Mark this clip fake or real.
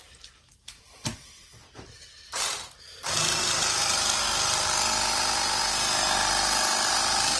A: real